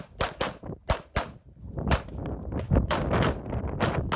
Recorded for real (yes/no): yes